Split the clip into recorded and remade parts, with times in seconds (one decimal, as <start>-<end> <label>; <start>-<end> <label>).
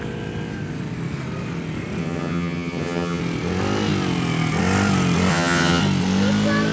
0.0-2.0 recorded; 2.0-3.2 remade; 3.2-5.3 recorded; 5.3-5.8 remade; 5.8-6.7 recorded